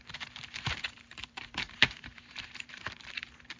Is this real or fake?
fake